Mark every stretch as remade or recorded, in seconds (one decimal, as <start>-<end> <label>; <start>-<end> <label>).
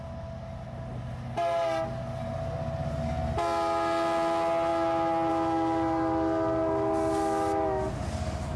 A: 0.0-8.6 recorded